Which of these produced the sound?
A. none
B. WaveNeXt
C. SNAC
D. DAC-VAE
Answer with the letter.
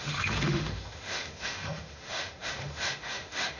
D